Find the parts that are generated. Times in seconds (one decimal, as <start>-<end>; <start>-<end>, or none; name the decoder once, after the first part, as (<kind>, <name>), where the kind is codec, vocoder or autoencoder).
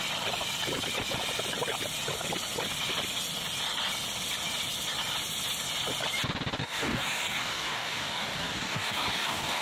6.6-9.6 (codec, DAC)